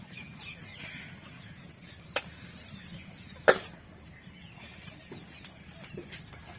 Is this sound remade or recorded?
remade